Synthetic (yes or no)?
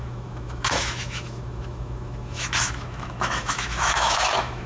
yes